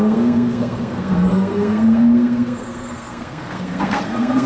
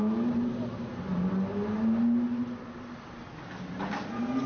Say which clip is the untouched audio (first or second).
second